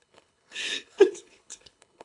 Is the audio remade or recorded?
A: remade